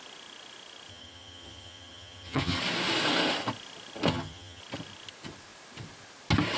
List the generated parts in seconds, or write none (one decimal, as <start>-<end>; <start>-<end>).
0.9-2.6; 4.1-4.6

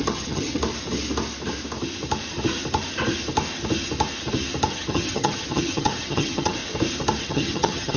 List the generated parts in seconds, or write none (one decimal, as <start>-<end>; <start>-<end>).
0.0-0.6; 4.7-6.6; 7.2-8.0

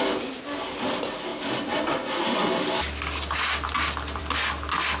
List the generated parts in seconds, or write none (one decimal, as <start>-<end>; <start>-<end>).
none

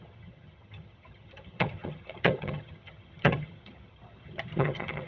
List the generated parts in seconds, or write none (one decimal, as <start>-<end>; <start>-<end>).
0.0-5.1

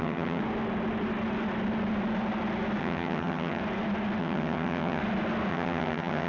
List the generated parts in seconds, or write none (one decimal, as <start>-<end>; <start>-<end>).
0.0-0.4; 2.8-3.6; 4.2-5.0; 5.5-6.3

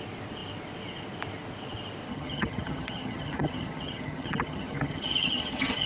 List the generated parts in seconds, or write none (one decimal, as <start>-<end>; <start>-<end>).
2.1-5.9